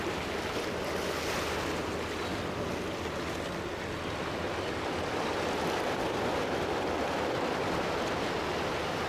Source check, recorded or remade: recorded